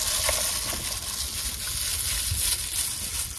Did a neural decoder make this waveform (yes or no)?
no